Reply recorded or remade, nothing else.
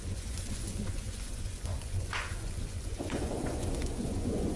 remade